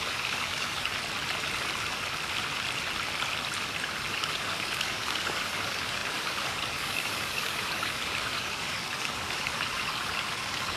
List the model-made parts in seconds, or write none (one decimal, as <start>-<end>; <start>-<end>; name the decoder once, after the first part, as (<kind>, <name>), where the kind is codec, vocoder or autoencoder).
0.0-1.0 (codec, DAC); 4.1-10.8